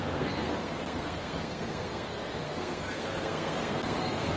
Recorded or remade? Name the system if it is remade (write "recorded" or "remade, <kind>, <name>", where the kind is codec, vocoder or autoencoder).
remade, codec, SNAC